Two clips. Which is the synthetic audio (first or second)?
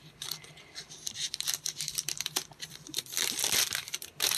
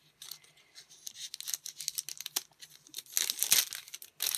first